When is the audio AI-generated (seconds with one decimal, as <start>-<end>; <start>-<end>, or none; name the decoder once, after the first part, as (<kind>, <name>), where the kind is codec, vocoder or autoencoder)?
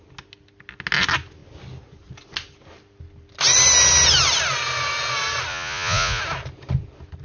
5.5-6.2 (vocoder, Vocos)